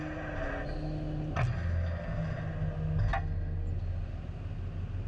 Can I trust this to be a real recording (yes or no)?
yes